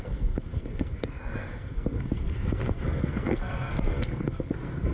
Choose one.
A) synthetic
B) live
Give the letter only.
A